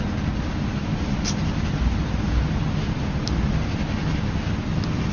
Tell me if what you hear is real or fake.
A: real